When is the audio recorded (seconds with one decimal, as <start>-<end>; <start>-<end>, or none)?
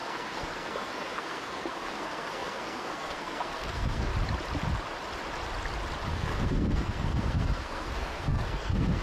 4.1-6.1